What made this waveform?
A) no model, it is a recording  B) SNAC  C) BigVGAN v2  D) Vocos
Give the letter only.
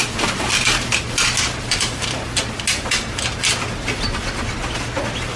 A